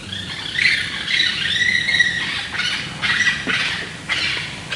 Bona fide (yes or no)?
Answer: yes